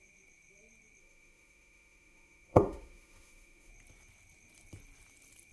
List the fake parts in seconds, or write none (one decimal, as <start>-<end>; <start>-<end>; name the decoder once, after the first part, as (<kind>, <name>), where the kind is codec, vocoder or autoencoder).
1.0-3.7 (autoencoder, DAC-VAE)